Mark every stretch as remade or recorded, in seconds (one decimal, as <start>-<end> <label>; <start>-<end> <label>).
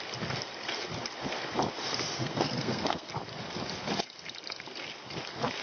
0.0-2.2 recorded; 2.2-3.1 remade; 3.1-5.6 recorded